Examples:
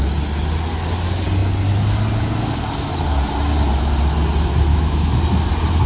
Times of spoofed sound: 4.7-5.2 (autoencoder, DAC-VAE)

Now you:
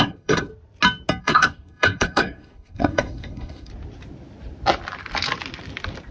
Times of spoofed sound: 0.0-0.5 (codec, SNAC); 1.2-3.7

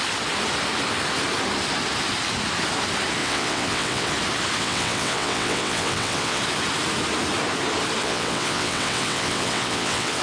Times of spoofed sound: 3.2-4.1 (vocoder, WaveNeXt); 4.6-6.4; 8.0-10.2

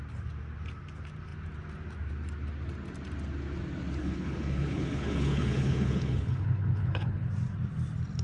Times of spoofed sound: 4.0-7.3 (codec, HILCodec)